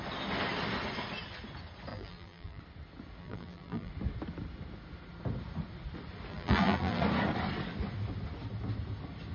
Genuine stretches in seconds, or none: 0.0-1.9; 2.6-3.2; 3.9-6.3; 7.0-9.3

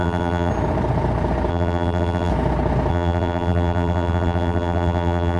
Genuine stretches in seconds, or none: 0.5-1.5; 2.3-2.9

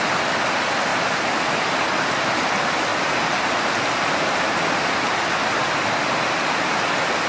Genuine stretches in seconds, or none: 0.0-0.9; 1.9-2.9; 5.3-7.3

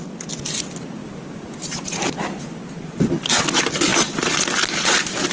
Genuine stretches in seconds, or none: 0.0-1.0; 2.9-5.3

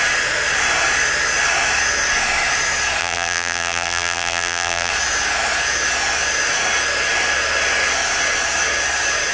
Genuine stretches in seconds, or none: 0.0-3.0; 4.9-9.3

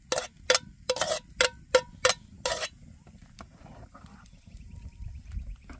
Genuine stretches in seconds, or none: 0.0-3.2; 4.9-5.8